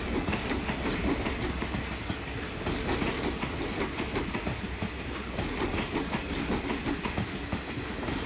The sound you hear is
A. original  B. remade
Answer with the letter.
A